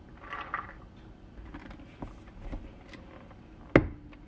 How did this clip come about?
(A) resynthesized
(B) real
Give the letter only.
B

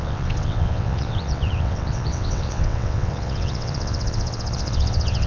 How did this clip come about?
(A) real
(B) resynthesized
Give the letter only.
B